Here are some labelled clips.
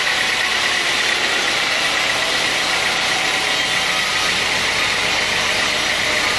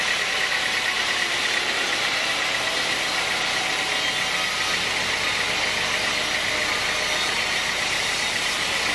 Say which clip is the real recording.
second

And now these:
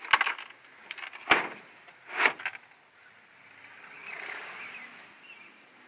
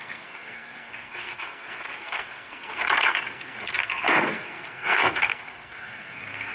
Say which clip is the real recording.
first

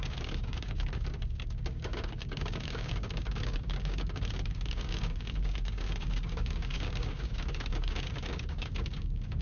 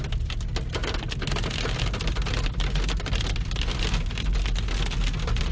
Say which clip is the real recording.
second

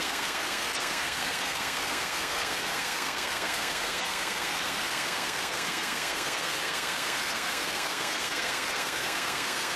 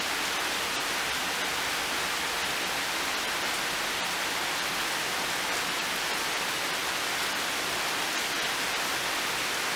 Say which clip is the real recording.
second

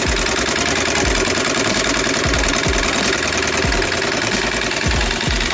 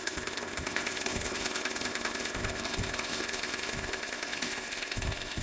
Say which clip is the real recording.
first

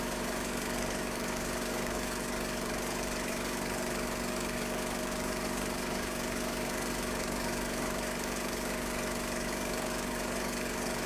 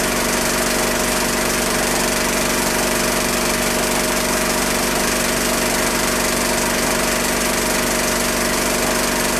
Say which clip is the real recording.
second